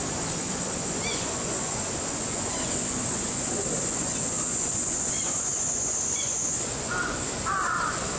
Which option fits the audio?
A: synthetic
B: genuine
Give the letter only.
A